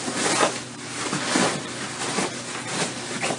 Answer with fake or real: real